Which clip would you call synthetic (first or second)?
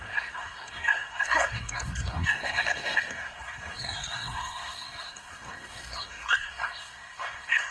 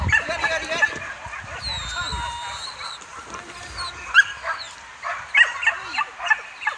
first